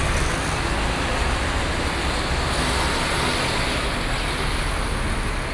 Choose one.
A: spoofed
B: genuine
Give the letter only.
B